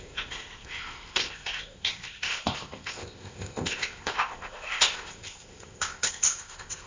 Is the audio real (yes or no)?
no